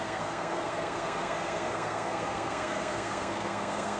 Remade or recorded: remade